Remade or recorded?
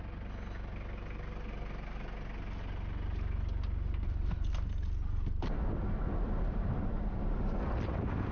recorded